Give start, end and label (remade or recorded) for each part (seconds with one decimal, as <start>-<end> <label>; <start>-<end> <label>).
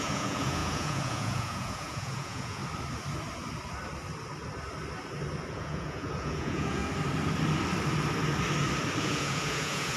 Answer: 0.0-2.6 remade; 2.6-5.5 recorded; 5.5-6.8 remade; 6.8-9.0 recorded; 9.0-10.0 remade